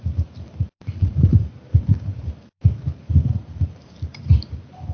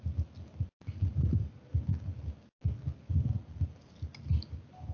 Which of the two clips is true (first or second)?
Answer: second